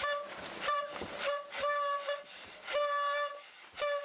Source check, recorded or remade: recorded